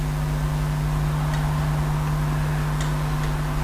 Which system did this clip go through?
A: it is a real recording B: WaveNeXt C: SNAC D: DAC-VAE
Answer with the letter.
A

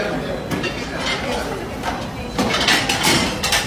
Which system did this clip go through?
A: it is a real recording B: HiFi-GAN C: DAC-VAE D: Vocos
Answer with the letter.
A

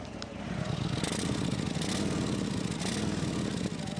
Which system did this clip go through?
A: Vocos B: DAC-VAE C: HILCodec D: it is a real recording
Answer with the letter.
D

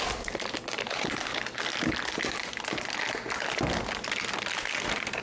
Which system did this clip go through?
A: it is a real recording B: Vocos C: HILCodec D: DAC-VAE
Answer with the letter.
A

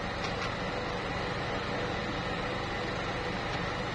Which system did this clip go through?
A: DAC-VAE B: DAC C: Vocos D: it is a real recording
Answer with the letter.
D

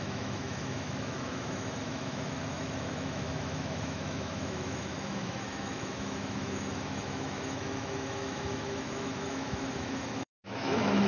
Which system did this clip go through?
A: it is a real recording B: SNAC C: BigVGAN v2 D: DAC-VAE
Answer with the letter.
D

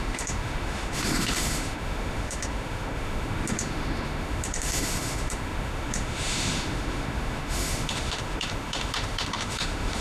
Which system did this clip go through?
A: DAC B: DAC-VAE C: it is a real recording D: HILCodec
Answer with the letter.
B